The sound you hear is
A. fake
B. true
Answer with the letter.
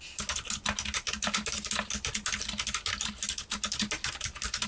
B